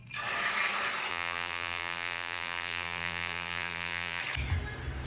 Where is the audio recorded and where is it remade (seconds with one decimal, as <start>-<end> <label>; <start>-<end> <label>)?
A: 0.0-1.1 recorded; 1.1-4.2 remade; 4.2-5.1 recorded